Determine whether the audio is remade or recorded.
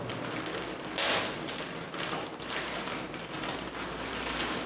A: recorded